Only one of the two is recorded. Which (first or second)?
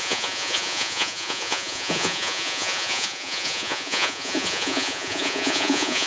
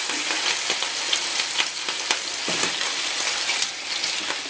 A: second